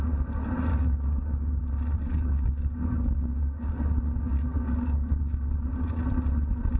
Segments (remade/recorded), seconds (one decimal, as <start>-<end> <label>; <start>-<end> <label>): 0.0-0.7 recorded; 0.7-1.6 remade; 1.6-2.1 recorded; 2.1-3.7 remade; 3.7-4.3 recorded; 4.3-5.2 remade; 5.2-6.8 recorded